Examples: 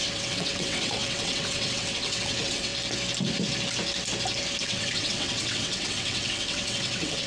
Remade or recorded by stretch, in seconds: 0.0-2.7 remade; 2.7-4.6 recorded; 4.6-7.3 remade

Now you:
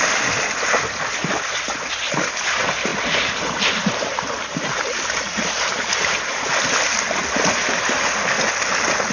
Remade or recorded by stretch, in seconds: 0.0-9.1 recorded